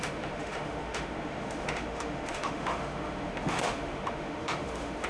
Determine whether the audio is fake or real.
fake